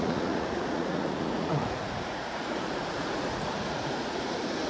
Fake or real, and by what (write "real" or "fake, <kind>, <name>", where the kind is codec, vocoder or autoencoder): fake, vocoder, Vocos